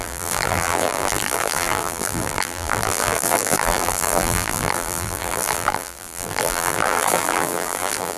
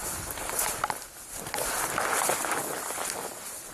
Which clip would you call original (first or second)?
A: second